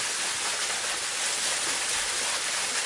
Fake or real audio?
real